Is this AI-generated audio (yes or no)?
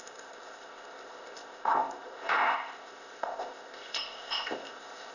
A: yes